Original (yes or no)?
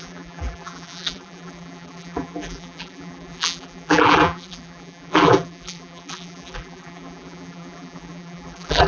no